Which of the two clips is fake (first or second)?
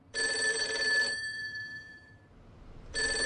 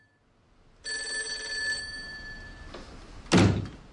first